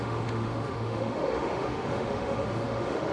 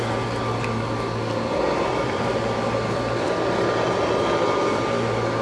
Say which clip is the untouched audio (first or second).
second